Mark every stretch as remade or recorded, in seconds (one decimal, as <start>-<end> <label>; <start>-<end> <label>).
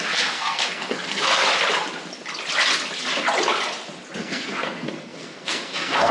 0.0-1.4 remade; 1.4-4.2 recorded; 4.2-6.1 remade